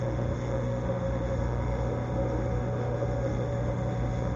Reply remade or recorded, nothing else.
remade